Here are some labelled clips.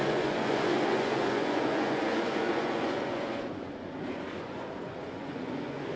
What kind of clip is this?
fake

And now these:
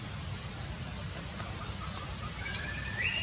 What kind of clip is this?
real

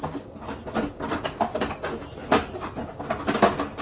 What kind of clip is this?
real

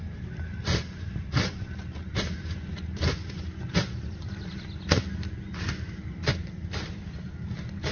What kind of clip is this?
real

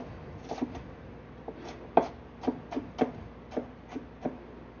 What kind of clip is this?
real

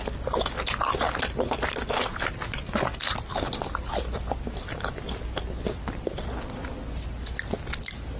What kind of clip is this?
real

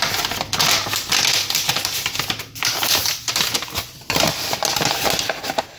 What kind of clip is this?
real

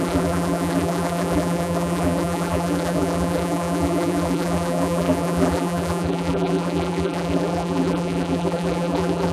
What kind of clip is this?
fake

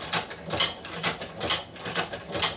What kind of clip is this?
real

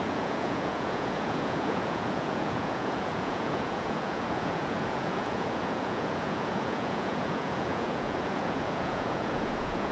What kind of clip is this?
fake